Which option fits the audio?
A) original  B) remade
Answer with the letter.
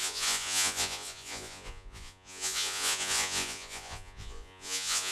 B